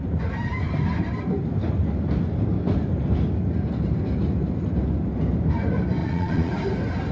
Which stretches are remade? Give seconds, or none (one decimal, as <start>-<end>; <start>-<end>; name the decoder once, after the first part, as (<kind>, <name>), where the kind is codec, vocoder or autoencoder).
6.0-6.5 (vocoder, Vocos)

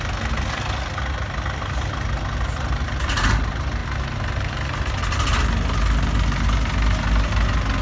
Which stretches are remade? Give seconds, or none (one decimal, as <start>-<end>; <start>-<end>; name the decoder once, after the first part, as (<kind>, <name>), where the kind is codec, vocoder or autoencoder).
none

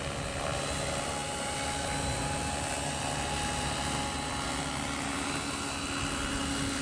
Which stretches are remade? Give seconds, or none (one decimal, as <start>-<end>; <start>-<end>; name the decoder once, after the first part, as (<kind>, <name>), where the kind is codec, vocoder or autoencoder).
none